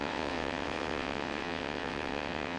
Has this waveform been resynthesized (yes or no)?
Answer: yes